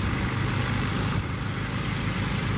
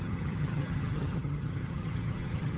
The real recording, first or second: first